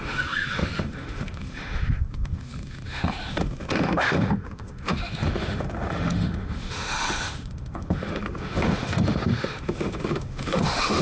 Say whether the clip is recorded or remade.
remade